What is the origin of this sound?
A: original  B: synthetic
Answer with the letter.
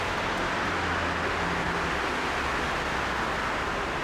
A